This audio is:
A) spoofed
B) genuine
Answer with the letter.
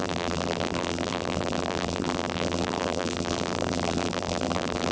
A